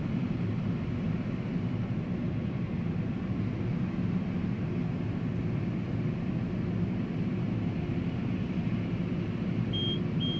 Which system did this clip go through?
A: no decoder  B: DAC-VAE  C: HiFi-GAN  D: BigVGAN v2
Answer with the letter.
A